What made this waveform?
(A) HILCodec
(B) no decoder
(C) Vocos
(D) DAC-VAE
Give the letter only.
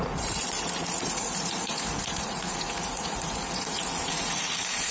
C